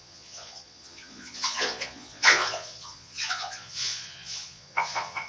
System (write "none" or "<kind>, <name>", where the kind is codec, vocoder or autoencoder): vocoder, Vocos